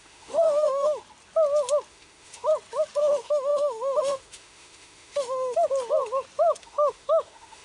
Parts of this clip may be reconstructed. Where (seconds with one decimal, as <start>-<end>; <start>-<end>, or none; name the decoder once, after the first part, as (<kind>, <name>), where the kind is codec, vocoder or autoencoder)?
0.0-1.0 (autoencoder, DAC-VAE); 1.9-2.5; 3.0-5.7; 6.6-7.6